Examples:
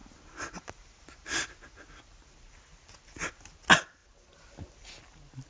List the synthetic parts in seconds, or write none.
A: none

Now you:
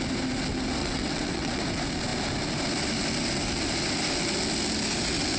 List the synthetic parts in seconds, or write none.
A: 0.8-1.6 (vocoder, WaveNeXt)

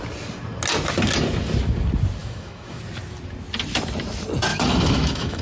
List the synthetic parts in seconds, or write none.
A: 2.2-2.8 (autoencoder, DAC-VAE); 4.5-5.4

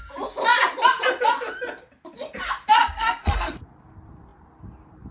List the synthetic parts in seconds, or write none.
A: 2.8-3.6 (codec, SNAC)

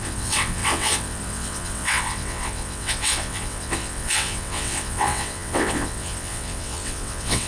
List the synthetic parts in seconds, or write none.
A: 0.0-7.5 (vocoder, WaveNeXt)

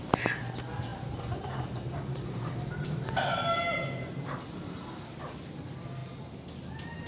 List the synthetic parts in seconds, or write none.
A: 0.9-5.2 (vocoder, BigVGAN v2)

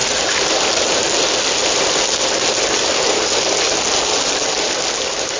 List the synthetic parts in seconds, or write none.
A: none

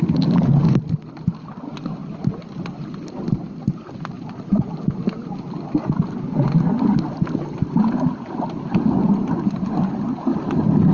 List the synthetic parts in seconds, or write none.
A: none